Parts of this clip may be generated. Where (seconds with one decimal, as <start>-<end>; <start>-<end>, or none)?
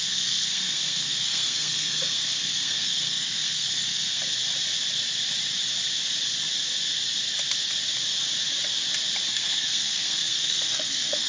0.0-4.2; 9.3-11.3